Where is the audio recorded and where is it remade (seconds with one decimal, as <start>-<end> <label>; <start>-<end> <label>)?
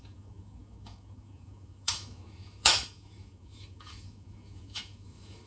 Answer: 0.0-5.5 remade